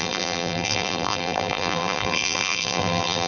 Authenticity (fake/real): fake